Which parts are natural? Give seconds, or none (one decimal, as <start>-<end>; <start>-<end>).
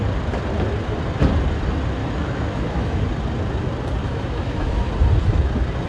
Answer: 0.0-2.0; 3.0-4.0; 4.9-5.9